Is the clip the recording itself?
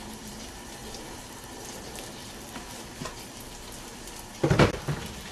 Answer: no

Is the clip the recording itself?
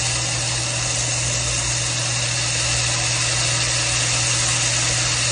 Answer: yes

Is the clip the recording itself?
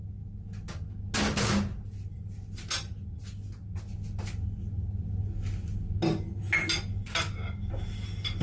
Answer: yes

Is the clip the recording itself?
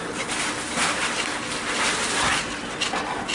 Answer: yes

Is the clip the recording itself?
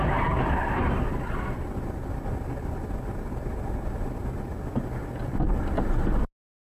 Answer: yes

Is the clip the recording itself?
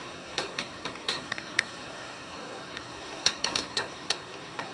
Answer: no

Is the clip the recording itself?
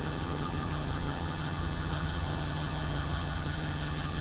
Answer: no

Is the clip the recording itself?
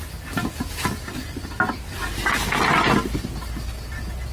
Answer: yes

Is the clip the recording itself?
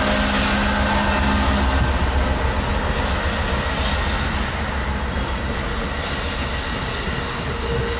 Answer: yes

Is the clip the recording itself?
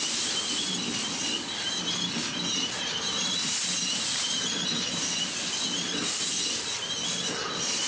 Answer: yes